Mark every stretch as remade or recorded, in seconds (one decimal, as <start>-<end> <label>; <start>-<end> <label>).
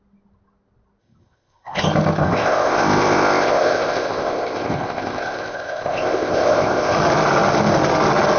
0.0-1.0 recorded; 1.0-1.8 remade; 1.8-2.2 recorded; 2.2-6.9 remade; 6.9-8.4 recorded